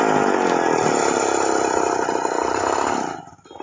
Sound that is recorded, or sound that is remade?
recorded